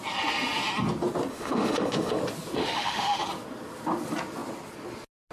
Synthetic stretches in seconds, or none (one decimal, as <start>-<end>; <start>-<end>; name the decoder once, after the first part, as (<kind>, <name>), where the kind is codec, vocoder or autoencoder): 1.3-2.2 (autoencoder, DAC-VAE); 2.6-3.2